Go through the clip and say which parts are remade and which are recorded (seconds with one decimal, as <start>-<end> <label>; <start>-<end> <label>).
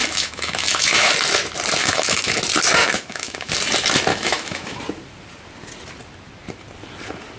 0.0-1.1 remade; 1.1-1.8 recorded; 1.8-2.4 remade; 2.4-2.8 recorded; 2.8-3.5 remade; 3.5-4.1 recorded; 4.1-4.8 remade; 4.8-7.4 recorded